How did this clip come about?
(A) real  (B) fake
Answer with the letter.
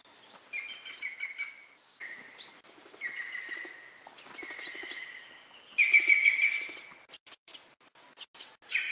A